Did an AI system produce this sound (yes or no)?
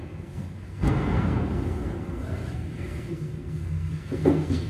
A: yes